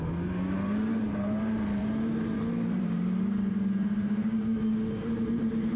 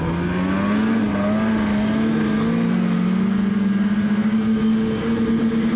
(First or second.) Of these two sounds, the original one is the second